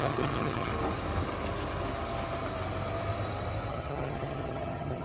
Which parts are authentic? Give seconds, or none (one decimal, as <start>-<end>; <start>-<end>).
0.7-3.7